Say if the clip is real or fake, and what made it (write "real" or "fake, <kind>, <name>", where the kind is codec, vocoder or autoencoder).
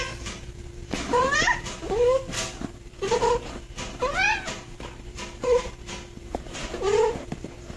fake, vocoder, BigVGAN v2